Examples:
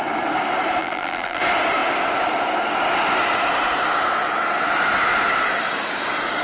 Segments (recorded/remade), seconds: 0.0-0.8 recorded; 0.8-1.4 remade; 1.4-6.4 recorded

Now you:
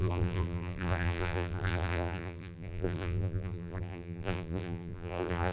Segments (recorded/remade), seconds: 0.0-5.5 remade

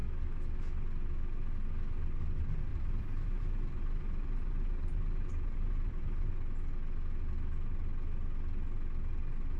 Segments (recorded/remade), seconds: 0.0-2.7 recorded; 2.7-6.3 remade; 6.3-9.6 recorded